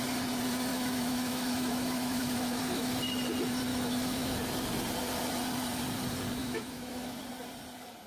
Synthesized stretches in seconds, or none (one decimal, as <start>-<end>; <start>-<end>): 0.7-3.0; 3.7-4.3; 6.4-7.2

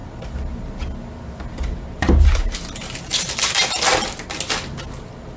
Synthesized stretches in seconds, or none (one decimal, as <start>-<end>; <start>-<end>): none

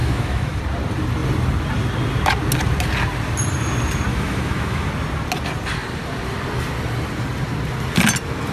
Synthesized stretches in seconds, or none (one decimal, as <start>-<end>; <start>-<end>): 0.0-0.6; 4.1-4.9